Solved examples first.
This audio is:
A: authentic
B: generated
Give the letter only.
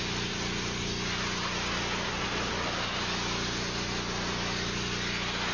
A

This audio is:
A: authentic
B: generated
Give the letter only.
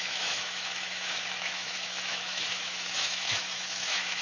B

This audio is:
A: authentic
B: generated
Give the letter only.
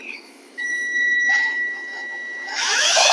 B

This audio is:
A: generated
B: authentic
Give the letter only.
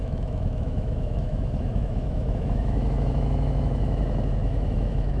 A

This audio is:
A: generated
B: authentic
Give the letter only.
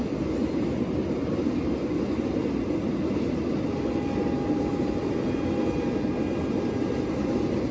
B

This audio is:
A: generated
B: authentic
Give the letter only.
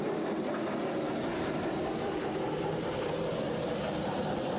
B